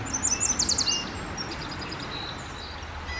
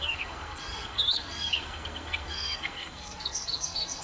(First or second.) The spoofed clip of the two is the second